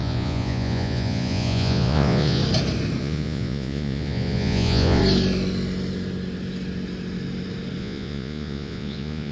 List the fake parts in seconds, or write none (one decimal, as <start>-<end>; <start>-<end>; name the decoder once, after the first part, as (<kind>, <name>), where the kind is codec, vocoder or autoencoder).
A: 0.0-2.4 (vocoder, Vocos); 3.0-5.0; 7.8-9.3